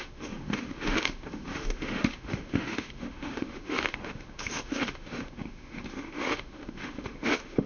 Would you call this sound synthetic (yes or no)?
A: yes